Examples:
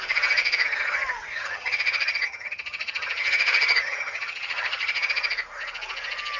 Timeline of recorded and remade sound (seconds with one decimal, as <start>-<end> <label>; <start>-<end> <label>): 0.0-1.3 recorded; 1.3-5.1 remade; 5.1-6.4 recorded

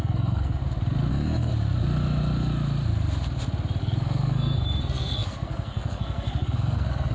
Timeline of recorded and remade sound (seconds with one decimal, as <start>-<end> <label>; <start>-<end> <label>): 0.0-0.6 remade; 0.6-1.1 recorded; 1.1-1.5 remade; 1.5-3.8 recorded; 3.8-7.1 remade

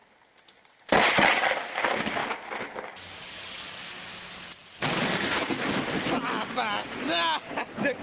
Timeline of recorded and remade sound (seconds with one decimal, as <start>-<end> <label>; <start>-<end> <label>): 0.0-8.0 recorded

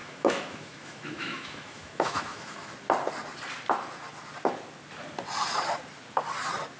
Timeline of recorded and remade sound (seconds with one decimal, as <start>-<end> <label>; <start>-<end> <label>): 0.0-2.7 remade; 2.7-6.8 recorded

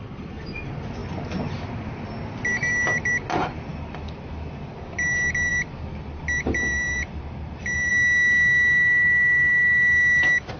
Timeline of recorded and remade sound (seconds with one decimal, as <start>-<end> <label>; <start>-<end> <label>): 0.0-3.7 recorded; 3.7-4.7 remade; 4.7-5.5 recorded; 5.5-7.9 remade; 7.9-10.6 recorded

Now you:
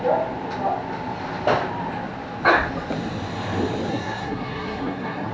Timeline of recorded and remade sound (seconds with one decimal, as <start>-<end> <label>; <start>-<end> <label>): 0.0-3.9 recorded; 3.9-5.3 remade